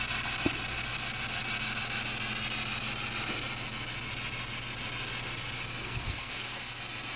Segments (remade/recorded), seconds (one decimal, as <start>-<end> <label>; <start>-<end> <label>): 0.0-5.8 recorded; 5.8-6.8 remade; 6.8-7.2 recorded